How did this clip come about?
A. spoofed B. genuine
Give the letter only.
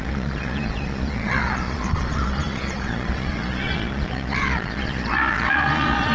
A